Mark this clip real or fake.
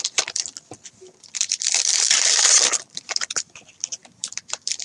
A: fake